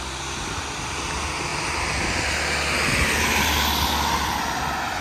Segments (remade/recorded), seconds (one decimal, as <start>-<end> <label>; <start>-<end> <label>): 0.0-5.0 recorded